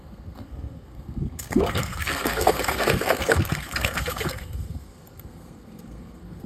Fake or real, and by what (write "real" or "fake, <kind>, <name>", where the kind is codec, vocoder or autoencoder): fake, codec, SNAC